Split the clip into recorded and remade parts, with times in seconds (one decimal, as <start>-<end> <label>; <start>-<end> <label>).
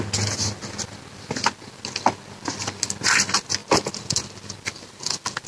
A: 0.0-5.5 recorded